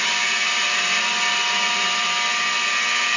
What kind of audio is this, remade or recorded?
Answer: recorded